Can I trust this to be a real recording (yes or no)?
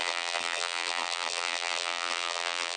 no